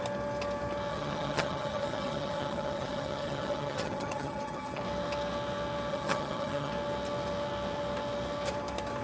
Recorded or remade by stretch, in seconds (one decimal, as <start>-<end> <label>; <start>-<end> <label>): 0.0-0.9 recorded; 0.9-4.8 remade; 4.8-5.9 recorded; 5.9-6.7 remade; 6.7-9.0 recorded